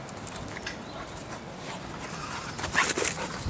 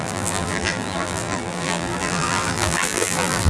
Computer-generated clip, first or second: second